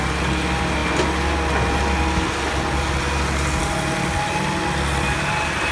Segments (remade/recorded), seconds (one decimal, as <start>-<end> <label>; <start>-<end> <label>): 0.0-5.7 recorded